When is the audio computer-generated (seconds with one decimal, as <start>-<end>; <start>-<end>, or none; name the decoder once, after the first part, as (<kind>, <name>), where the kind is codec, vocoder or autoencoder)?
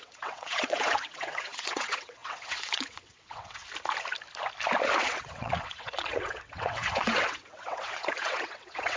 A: 0.0-3.6 (vocoder, WaveNeXt); 5.0-9.0